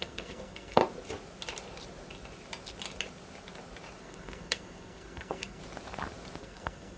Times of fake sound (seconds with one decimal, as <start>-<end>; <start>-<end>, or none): 0.0-0.8; 4.0-5.6; 6.4-7.0